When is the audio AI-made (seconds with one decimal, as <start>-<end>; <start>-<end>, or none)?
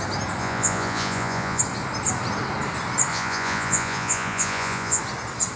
0.4-1.6; 3.1-5.0